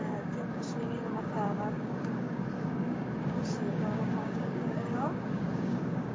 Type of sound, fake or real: fake